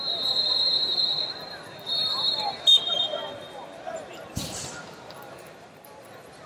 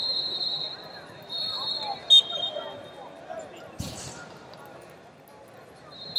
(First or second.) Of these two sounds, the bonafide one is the second